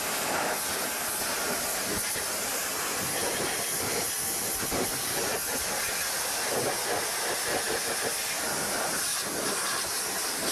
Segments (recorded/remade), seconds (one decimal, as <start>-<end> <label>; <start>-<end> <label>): 0.0-10.5 recorded